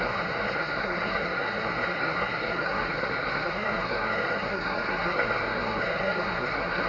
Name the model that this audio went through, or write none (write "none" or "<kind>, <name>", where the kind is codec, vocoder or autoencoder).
codec, SNAC